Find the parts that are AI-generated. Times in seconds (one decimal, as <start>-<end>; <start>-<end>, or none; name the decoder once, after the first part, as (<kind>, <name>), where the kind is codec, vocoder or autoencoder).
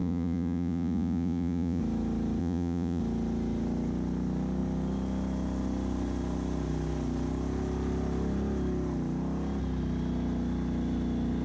0.0-1.8 (vocoder, Vocos); 2.4-3.0